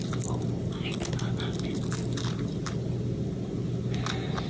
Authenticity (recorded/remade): recorded